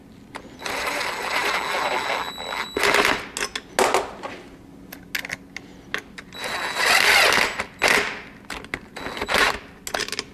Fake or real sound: real